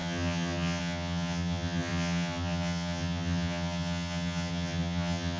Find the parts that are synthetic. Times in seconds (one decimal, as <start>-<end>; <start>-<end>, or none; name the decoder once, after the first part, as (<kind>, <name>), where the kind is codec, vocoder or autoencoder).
0.0-5.4 (vocoder, HiFi-GAN)